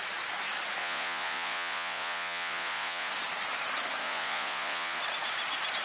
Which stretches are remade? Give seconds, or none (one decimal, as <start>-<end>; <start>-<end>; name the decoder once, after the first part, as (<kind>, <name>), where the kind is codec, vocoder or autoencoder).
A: 0.8-3.1 (vocoder, Vocos); 4.0-5.0